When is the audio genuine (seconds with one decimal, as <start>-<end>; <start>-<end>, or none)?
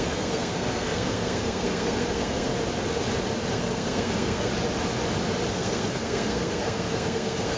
2.5-3.5; 4.5-5.5